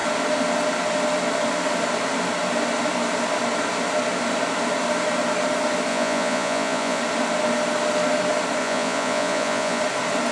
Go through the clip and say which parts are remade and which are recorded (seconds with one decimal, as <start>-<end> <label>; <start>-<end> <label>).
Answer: 0.0-5.9 recorded; 5.9-7.0 remade; 7.0-8.6 recorded; 8.6-9.8 remade; 9.8-10.3 recorded